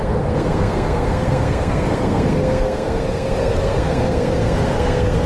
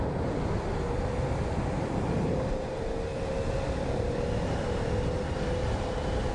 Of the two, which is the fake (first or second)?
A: first